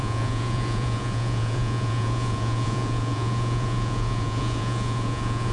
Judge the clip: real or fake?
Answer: fake